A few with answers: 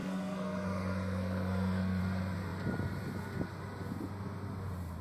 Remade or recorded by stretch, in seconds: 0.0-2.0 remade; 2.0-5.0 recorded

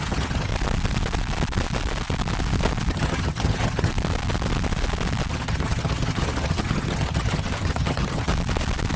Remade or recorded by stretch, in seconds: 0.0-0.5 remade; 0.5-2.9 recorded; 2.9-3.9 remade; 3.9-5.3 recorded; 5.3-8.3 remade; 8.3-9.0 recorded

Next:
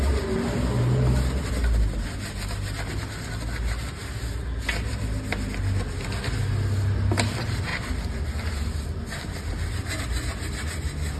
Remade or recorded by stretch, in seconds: 0.0-11.2 recorded

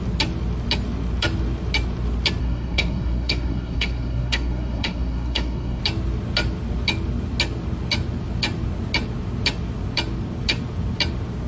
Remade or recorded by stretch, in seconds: 0.0-2.4 recorded; 2.4-5.8 remade; 5.8-11.5 recorded

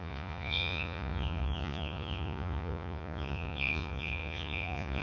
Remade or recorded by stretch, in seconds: 0.0-5.0 remade

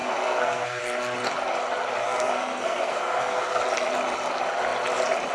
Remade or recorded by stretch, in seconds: 0.0-0.8 remade; 0.8-2.0 recorded; 2.0-3.6 remade; 3.6-5.3 recorded